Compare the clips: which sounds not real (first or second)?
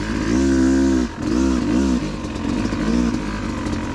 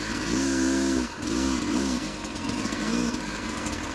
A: second